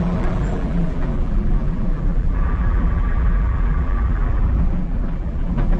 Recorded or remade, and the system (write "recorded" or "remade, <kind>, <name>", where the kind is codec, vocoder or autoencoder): remade, vocoder, BigVGAN v2